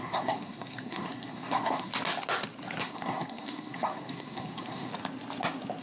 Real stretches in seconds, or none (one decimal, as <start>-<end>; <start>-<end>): 1.9-2.8; 4.9-5.8